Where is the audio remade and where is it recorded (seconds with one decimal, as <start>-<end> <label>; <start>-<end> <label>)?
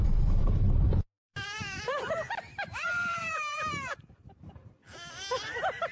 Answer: 0.0-5.9 remade